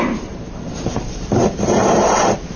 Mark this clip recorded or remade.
remade